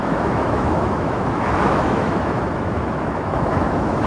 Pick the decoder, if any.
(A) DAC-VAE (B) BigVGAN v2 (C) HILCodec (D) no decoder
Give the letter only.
A